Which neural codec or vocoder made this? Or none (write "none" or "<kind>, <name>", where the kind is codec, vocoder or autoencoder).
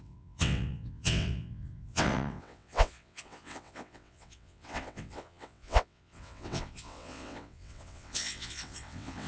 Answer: vocoder, WaveNeXt